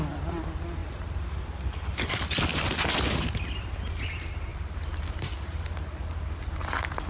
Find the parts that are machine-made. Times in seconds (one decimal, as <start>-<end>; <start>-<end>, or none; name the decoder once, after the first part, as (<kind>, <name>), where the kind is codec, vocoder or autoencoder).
4.5-6.3 (vocoder, BigVGAN v2)